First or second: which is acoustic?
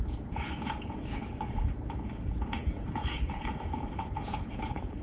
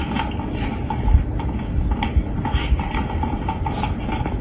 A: second